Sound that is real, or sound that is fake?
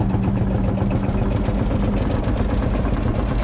real